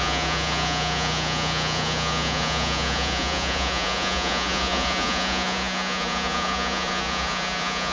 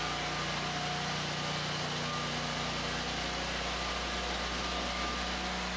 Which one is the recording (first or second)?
second